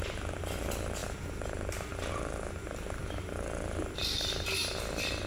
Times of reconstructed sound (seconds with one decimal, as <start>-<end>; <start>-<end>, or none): none